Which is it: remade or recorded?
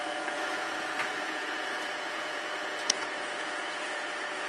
remade